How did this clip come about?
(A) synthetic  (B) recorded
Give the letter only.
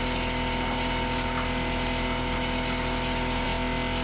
B